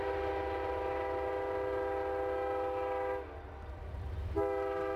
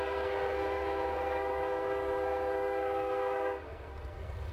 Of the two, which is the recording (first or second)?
first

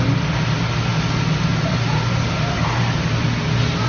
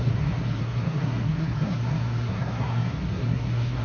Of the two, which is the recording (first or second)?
first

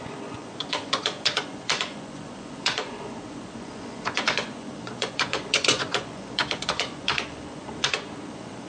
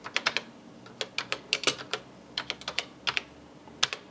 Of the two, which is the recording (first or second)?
second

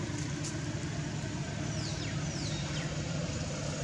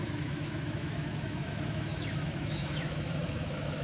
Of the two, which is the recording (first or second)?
first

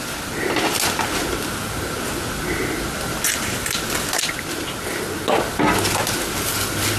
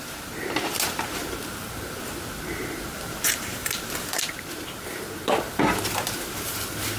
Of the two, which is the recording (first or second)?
first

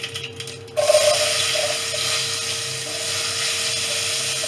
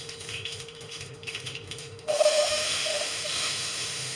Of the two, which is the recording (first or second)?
first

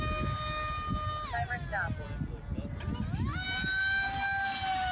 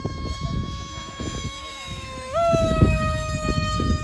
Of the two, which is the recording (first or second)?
first